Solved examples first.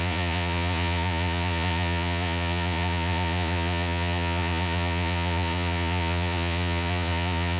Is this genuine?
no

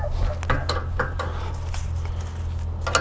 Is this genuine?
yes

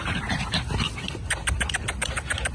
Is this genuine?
yes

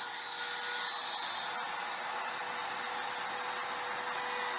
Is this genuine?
yes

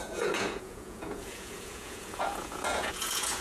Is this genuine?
no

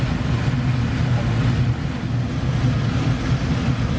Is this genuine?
yes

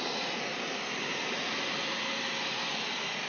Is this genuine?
yes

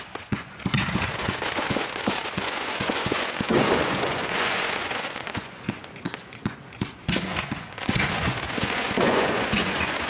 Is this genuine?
no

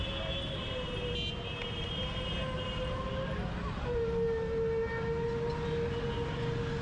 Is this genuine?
yes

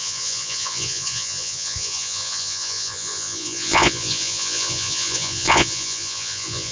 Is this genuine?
no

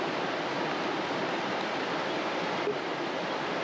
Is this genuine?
yes